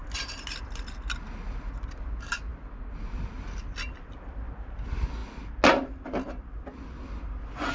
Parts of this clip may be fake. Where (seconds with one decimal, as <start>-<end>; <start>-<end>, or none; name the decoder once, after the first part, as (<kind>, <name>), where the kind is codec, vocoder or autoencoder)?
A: none